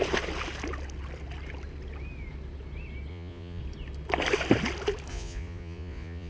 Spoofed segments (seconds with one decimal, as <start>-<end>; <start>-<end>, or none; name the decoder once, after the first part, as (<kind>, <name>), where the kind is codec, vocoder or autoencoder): 3.1-3.6 (vocoder, Vocos); 5.1-6.3